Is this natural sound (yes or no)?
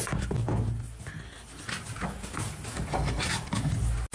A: yes